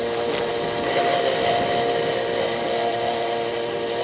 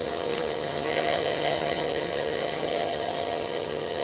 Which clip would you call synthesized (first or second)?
second